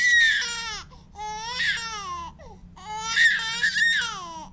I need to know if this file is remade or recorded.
recorded